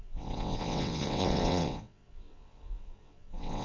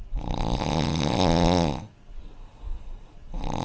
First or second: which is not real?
first